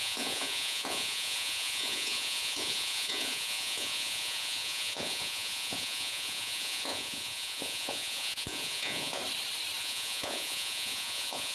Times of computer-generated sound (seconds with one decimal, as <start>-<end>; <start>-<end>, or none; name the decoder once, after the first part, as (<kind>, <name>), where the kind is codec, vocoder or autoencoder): 0.0-9.2 (vocoder, Vocos); 9.8-11.5